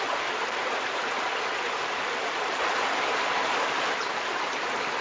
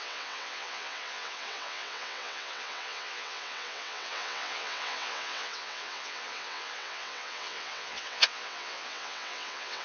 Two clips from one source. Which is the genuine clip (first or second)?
first